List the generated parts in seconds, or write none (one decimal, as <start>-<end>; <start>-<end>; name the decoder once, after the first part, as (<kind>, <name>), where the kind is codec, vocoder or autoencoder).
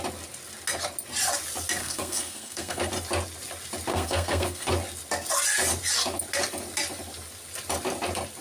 1.8-2.9 (codec, SNAC); 3.9-4.7